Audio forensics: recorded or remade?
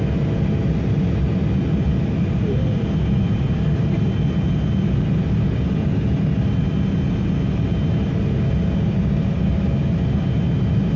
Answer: recorded